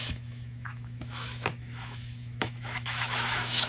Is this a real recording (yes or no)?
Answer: no